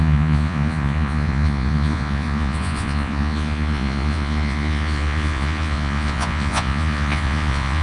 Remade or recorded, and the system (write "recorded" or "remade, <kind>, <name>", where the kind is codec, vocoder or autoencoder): remade, vocoder, Vocos